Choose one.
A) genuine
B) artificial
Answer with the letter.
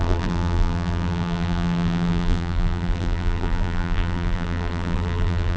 B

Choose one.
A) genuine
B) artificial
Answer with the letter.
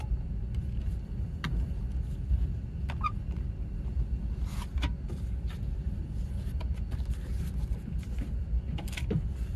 A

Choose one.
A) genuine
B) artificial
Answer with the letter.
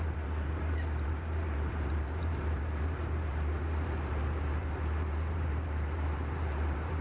B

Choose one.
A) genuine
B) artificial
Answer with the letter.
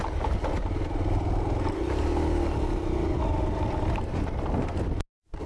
A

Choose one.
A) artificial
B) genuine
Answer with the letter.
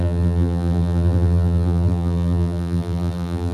A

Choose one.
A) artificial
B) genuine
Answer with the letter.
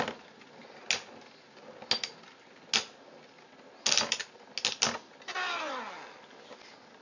B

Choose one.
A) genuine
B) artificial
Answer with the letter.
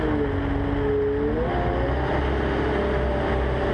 A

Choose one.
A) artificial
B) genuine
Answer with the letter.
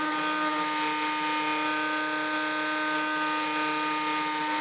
B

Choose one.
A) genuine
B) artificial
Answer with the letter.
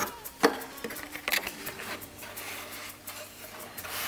B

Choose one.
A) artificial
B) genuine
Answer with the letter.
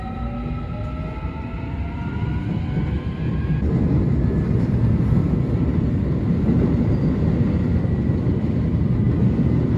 B